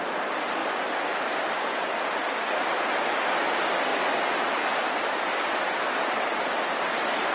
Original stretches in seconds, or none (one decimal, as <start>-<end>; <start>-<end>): 0.0-7.3